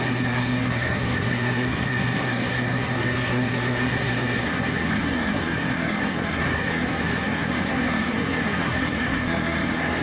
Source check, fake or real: fake